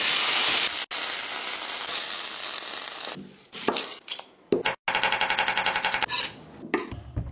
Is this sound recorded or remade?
recorded